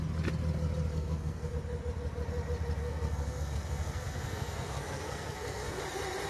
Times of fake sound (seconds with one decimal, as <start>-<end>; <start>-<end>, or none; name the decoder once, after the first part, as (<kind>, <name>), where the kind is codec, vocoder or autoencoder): 0.9-1.5 (codec, SNAC); 2.8-5.8